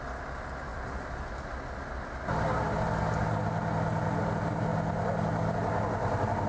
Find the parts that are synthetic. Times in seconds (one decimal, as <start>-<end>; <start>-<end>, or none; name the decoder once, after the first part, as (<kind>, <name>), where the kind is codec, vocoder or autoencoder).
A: none